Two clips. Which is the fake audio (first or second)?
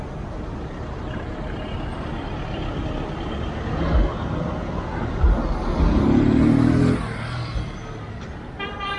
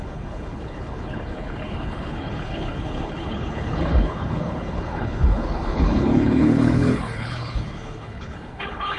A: second